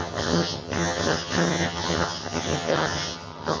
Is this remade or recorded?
remade